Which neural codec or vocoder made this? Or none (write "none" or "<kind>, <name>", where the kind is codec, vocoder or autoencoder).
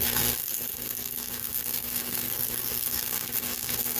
codec, SNAC